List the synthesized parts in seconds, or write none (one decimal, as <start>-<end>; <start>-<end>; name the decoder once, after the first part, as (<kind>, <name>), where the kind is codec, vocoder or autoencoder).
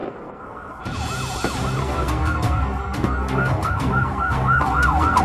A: 0.0-0.8 (codec, SNAC); 1.8-5.2